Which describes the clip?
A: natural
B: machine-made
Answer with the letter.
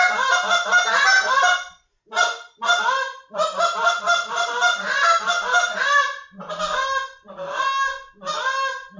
A